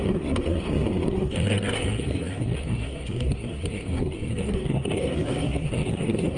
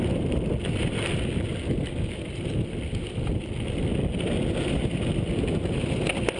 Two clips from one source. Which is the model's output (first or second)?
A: first